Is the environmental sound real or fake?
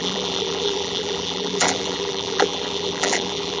fake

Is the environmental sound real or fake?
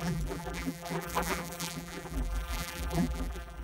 fake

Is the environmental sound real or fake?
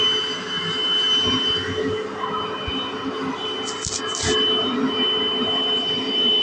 real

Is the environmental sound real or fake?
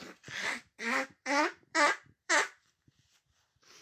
fake